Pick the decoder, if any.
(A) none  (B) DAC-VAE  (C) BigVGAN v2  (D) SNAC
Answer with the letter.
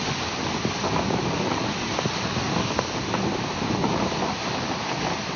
A